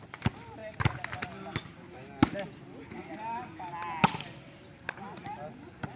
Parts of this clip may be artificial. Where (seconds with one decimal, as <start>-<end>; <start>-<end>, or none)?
none